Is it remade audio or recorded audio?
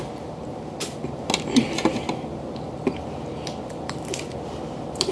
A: recorded